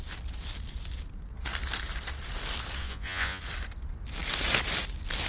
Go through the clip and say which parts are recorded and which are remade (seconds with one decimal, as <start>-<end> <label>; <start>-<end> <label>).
0.0-2.8 recorded; 2.8-3.4 remade; 3.4-5.3 recorded